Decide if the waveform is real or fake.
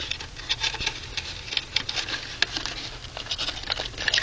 real